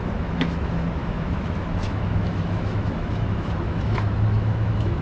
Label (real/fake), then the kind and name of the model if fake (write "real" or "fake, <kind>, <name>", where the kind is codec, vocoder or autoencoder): fake, autoencoder, DAC-VAE